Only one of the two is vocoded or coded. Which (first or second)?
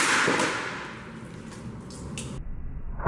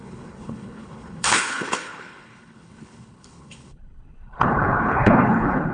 second